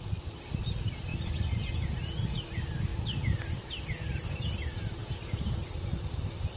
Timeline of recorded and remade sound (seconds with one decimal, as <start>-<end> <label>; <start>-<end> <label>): 0.0-5.0 recorded; 5.0-5.6 remade; 5.6-6.6 recorded